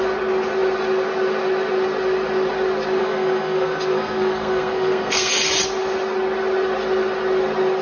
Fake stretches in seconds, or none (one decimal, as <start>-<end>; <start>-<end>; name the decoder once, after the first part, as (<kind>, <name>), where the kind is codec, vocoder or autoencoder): 3.0-5.3 (codec, SNAC)